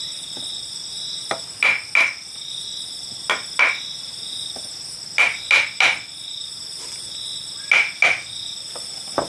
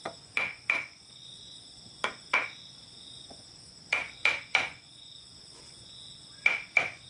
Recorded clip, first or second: first